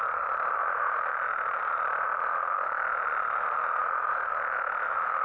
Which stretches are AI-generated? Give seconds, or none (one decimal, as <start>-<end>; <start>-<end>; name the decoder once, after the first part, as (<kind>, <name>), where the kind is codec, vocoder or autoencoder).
0.6-1.6 (vocoder, BigVGAN v2); 3.8-4.3